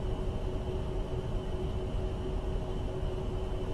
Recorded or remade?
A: recorded